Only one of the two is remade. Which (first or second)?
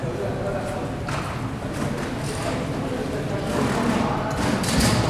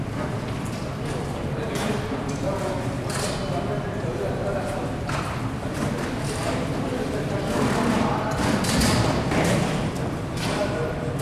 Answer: second